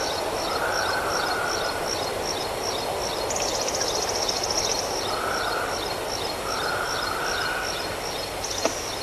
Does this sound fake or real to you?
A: real